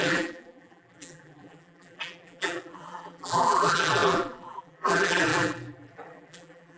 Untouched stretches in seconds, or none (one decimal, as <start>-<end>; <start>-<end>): none

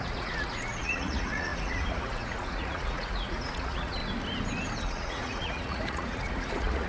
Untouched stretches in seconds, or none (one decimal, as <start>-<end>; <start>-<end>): 4.0-4.8

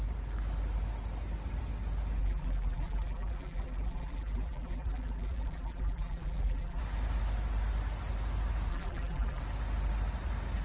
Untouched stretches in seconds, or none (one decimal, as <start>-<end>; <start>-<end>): 0.0-2.2; 6.8-8.7; 9.4-10.6

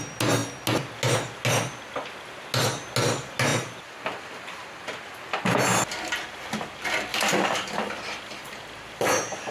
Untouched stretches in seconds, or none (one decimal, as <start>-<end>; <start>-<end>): 0.0-3.5; 5.0-7.1

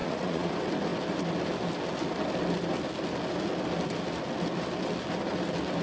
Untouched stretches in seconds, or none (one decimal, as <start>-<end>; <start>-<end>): 0.5-5.8